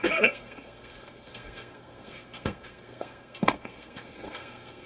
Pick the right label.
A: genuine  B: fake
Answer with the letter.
B